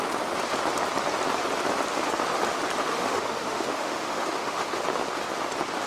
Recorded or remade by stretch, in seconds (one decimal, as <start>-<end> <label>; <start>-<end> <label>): 0.0-2.9 recorded; 2.9-4.8 remade; 4.8-5.9 recorded